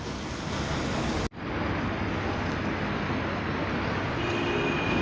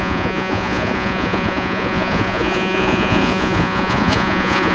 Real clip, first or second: first